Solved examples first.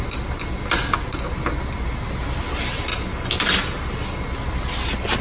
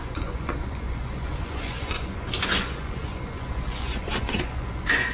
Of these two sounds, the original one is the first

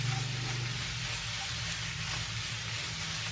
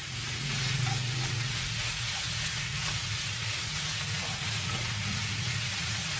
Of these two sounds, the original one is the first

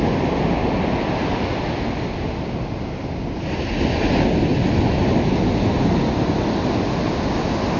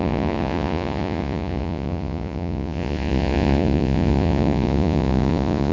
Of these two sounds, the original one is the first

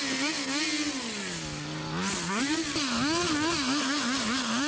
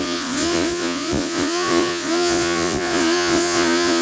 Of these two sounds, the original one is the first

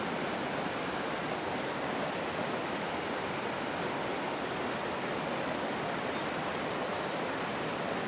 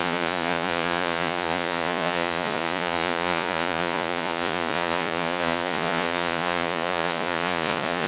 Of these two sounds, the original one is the first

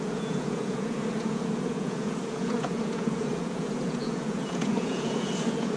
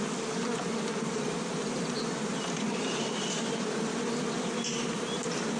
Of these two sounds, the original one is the second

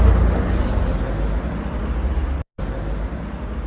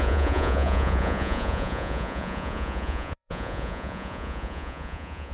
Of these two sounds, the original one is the first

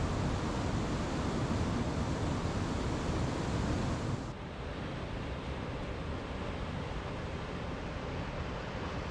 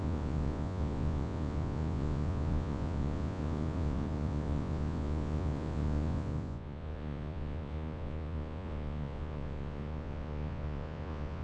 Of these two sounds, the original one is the first